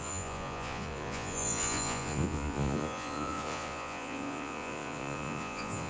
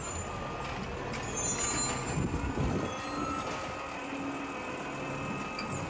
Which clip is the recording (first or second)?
second